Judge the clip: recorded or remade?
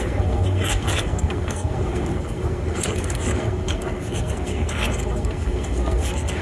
remade